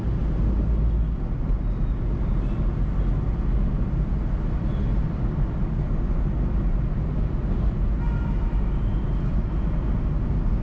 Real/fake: real